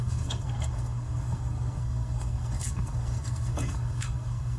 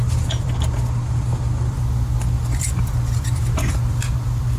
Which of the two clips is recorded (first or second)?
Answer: second